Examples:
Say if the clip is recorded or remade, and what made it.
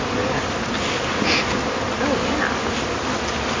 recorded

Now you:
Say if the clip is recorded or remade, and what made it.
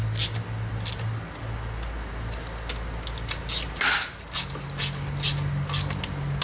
recorded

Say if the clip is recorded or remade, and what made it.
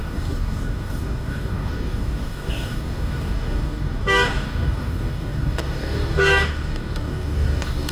remade, codec, DAC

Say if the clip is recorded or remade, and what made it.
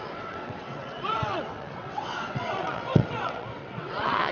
remade, vocoder, WaveNeXt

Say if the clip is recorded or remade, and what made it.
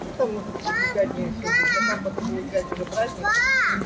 recorded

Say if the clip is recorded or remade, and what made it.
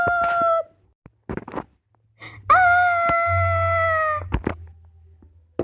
recorded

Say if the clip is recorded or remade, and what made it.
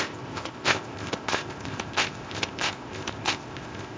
remade, codec, ZipCodec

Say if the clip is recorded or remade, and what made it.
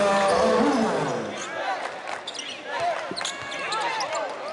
recorded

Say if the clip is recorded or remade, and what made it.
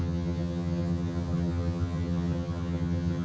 remade, vocoder, HiFi-GAN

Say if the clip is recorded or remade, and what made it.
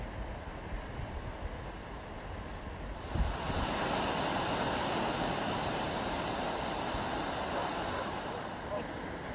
recorded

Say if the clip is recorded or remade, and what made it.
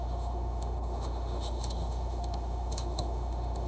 remade, autoencoder, DAC-VAE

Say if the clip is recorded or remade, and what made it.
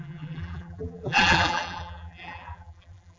remade, vocoder, BigVGAN v2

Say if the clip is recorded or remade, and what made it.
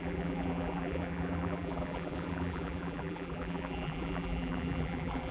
remade, vocoder, BigVGAN v2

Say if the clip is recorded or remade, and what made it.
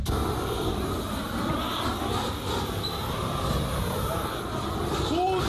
recorded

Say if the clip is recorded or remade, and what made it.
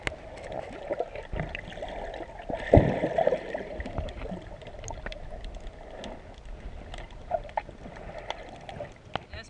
recorded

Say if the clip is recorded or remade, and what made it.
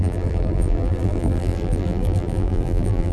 remade, vocoder, BigVGAN v2